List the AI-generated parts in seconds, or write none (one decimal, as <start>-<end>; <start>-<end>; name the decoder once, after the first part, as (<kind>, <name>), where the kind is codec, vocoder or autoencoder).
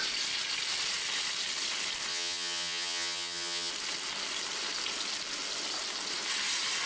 2.1-3.7 (vocoder, HiFi-GAN)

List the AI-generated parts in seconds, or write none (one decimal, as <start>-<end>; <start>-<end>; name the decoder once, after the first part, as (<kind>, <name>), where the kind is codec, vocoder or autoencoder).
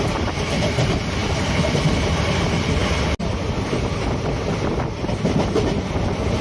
0.0-2.8 (vocoder, BigVGAN v2)